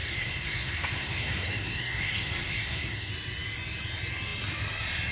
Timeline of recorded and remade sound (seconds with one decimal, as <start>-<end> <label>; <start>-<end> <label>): 0.0-3.1 remade; 3.1-5.1 recorded